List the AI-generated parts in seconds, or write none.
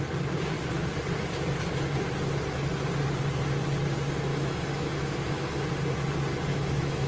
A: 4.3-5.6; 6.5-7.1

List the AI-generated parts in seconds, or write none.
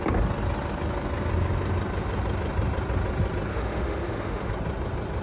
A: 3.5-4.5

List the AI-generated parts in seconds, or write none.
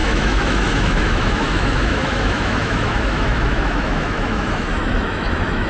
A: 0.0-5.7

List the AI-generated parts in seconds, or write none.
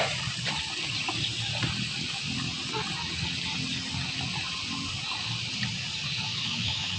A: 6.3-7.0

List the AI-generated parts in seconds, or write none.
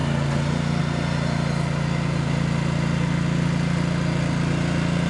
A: none